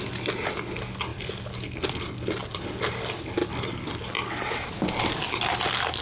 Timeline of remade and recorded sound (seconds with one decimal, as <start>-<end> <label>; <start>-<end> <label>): 0.0-6.0 recorded